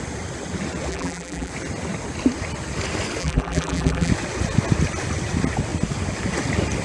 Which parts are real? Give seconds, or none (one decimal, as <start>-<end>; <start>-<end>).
0.0-0.9; 1.5-3.2; 4.1-6.8